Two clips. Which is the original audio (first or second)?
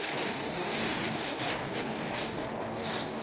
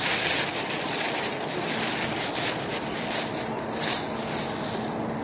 second